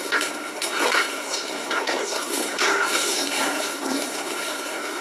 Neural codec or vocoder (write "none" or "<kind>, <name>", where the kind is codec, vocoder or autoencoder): codec, SNAC